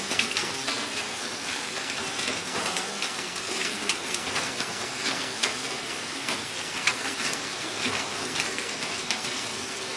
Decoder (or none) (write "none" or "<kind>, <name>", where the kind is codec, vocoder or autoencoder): codec, SNAC